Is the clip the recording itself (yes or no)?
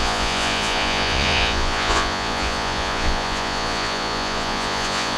no